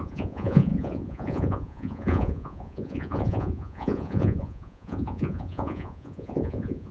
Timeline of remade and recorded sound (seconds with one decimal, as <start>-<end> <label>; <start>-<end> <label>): 0.0-6.9 remade